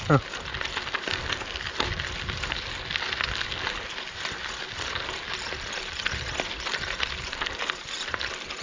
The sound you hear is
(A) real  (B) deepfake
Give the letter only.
A